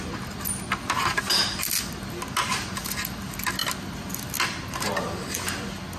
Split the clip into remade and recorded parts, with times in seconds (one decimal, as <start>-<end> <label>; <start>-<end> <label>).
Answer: 0.0-6.0 recorded